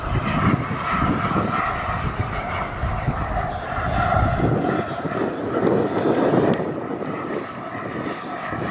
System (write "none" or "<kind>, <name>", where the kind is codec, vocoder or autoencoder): none